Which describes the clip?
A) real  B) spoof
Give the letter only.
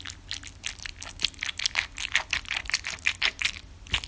A